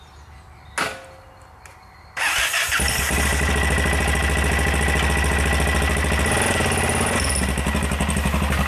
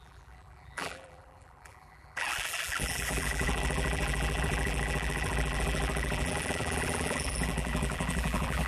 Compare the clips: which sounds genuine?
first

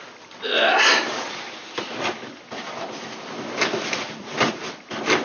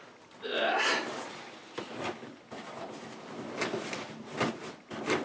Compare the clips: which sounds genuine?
second